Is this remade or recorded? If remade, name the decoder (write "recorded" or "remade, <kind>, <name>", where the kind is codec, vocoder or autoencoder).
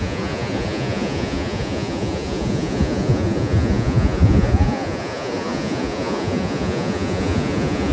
remade, vocoder, Vocos